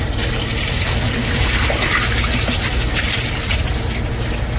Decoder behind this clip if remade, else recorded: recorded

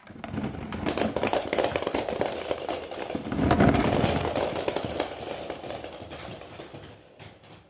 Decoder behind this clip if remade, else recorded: recorded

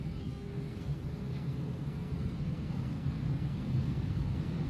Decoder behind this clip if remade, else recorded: remade, codec, SNAC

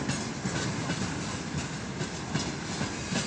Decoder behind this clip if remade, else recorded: recorded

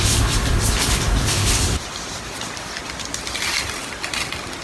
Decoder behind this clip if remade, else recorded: remade, vocoder, BigVGAN v2